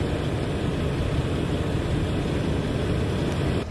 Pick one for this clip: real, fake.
real